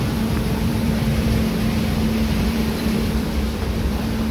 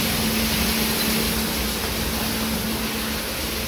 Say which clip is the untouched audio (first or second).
second